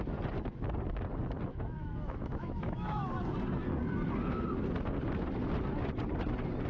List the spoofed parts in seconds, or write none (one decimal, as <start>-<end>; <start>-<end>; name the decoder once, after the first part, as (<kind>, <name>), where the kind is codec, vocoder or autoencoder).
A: 1.5-3.1 (autoencoder, DAC-VAE)